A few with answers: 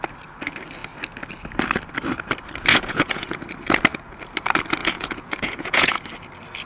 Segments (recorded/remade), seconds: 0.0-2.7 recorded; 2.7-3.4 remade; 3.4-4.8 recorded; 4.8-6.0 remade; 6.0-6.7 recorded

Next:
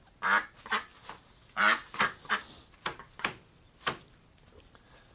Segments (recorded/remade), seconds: 0.0-5.1 recorded

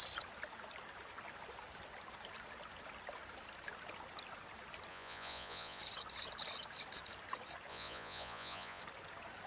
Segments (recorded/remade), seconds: 0.0-4.9 recorded; 4.9-5.8 remade; 5.8-7.7 recorded; 7.7-8.8 remade; 8.8-9.5 recorded

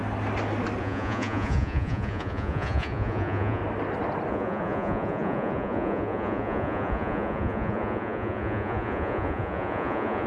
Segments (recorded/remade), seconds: 0.0-0.8 recorded; 0.8-3.6 remade; 3.6-4.3 recorded; 4.3-10.3 remade

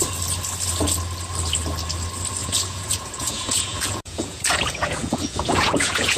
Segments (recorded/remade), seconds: 0.0-2.4 recorded; 2.4-6.2 remade

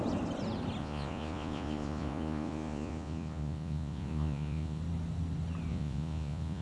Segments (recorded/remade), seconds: 0.0-0.8 recorded; 0.8-4.8 remade; 4.8-5.7 recorded; 5.7-6.6 remade

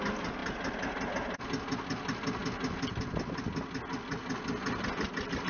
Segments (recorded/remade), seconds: 0.0-5.5 recorded

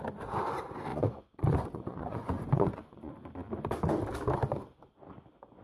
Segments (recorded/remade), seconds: 0.0-0.9 recorded; 0.9-3.1 remade; 3.1-5.6 recorded